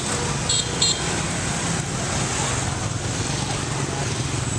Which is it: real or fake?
real